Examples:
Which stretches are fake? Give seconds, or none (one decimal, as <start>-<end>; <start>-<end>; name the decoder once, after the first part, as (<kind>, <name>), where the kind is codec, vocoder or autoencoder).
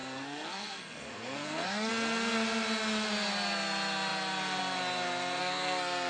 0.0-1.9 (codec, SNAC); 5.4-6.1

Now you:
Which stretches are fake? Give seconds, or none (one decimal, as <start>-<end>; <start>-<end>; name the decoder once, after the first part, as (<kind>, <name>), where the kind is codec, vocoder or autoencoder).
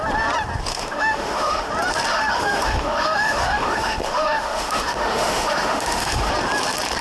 0.7-1.7 (autoencoder, DAC-VAE); 2.1-6.3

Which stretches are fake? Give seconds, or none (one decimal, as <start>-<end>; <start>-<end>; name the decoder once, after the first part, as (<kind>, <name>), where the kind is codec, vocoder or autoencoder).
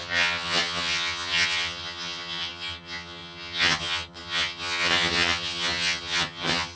0.0-6.8 (vocoder, HiFi-GAN)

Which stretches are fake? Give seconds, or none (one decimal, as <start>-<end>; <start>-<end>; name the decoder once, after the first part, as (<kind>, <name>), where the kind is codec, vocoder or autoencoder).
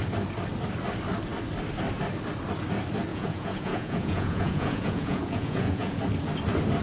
3.1-6.0 (vocoder, Vocos)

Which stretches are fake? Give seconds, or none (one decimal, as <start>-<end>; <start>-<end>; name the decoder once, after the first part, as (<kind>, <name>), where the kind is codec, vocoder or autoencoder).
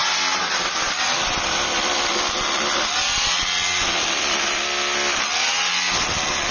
none